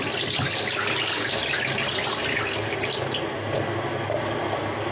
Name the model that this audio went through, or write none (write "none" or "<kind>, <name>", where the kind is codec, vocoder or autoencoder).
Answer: none